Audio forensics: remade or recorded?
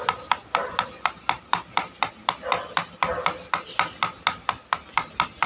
recorded